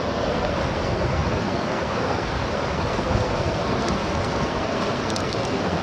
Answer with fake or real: fake